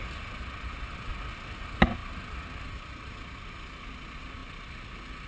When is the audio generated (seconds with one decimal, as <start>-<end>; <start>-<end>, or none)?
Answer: none